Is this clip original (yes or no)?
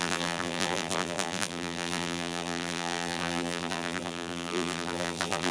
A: no